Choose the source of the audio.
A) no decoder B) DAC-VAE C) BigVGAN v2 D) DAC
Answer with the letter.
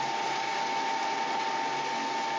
A